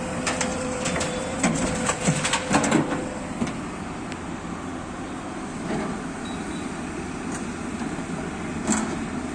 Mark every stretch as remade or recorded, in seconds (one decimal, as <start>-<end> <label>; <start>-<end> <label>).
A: 0.0-0.5 recorded; 0.5-1.7 remade; 1.7-9.3 recorded